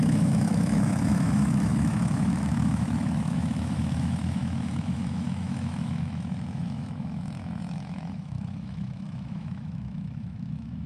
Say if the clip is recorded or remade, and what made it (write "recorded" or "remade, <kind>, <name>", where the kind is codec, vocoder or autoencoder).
remade, autoencoder, DAC-VAE